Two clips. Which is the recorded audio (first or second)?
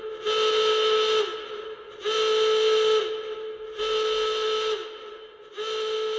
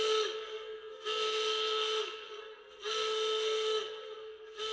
first